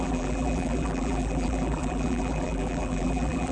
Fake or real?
fake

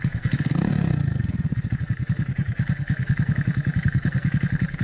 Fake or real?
fake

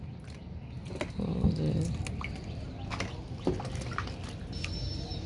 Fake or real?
real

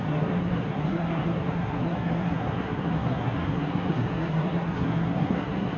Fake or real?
fake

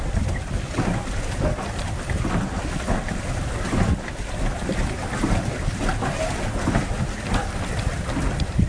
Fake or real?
real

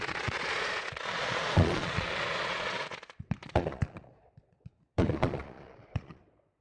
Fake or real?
fake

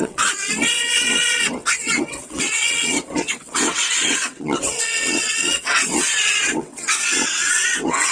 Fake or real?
fake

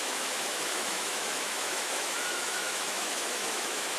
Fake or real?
fake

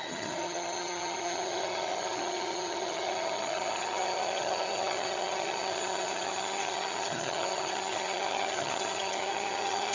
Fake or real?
fake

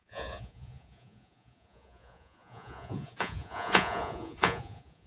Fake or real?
fake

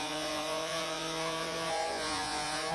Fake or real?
fake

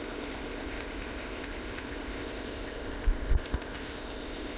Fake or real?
fake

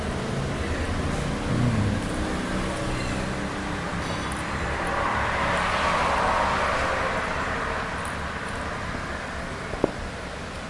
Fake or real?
real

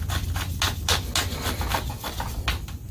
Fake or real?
real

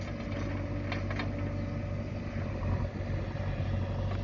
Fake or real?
real